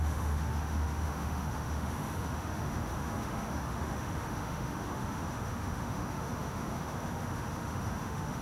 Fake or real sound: fake